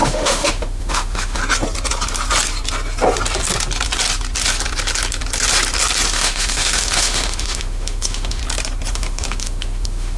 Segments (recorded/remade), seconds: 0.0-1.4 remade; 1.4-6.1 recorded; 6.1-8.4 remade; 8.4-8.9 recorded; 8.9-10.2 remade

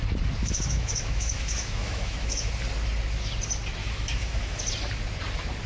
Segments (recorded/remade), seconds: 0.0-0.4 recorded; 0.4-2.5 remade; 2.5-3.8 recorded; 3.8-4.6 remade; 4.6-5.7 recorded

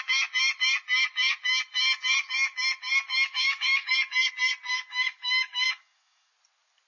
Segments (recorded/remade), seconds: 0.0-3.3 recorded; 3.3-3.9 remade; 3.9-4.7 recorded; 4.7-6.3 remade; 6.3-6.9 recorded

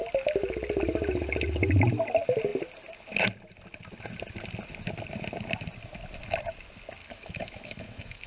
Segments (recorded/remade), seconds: 0.0-7.0 recorded; 7.0-8.3 remade